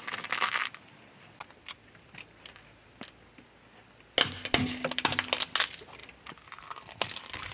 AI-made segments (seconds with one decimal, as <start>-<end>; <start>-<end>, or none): none